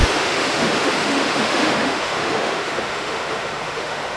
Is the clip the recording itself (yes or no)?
no